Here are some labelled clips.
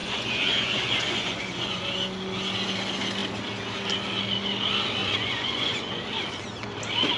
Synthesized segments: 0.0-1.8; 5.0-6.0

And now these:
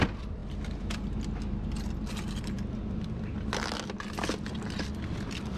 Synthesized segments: none

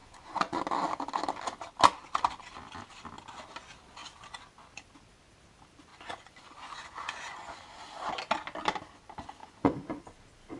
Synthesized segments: 0.0-0.6; 5.9-7.6; 9.4-10.0

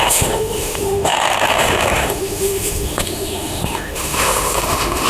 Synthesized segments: 0.0-5.1

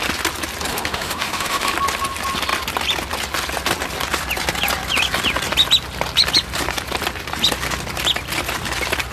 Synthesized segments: 0.7-1.7